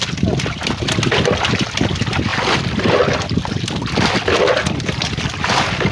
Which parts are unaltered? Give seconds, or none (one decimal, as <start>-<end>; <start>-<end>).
0.0-5.9